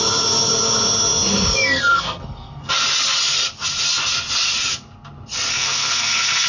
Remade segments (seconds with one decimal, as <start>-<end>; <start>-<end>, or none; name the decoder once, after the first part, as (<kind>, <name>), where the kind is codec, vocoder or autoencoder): 1.9-2.7 (codec, SNAC); 5.5-6.5